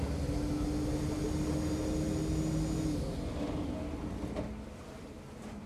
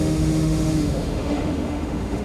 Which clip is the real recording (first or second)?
first